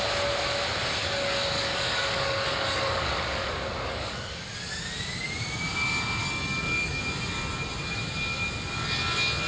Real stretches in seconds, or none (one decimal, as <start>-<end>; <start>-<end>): 0.0-1.0; 4.5-6.2; 7.0-9.5